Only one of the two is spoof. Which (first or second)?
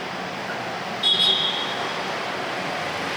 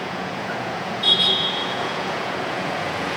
second